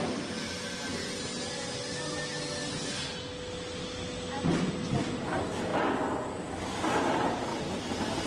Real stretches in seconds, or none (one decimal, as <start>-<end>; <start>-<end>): 0.0-7.5